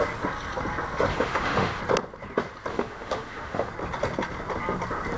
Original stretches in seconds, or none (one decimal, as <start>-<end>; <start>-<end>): 0.0-1.1; 1.8-2.7; 3.7-5.2